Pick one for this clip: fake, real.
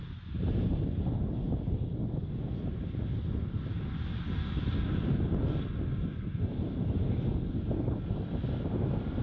real